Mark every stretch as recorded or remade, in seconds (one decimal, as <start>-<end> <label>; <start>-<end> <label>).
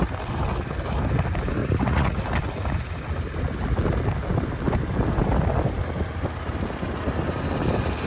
0.0-1.6 recorded; 1.6-2.2 remade; 2.2-8.1 recorded